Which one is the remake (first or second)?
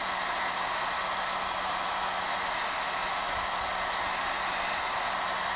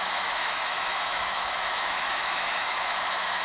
second